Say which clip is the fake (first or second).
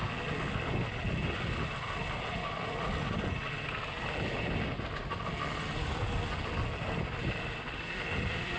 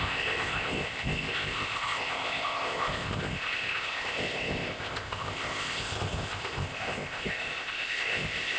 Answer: second